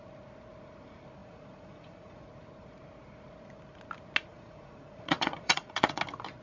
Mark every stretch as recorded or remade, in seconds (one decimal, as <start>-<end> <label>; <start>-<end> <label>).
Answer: 0.0-1.2 recorded; 1.2-2.2 remade; 2.2-4.3 recorded; 4.3-6.0 remade; 6.0-6.4 recorded